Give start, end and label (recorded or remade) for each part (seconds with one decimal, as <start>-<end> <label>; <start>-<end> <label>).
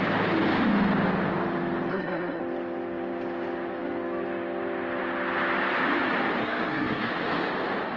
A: 0.0-1.9 recorded; 1.9-2.4 remade; 2.4-6.4 recorded; 6.4-7.1 remade; 7.1-8.0 recorded